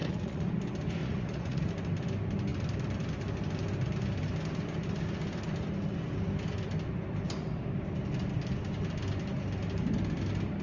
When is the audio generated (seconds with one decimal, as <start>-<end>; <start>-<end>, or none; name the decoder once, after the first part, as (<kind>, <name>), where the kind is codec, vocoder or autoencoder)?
0.0-0.5 (vocoder, Vocos); 1.0-1.7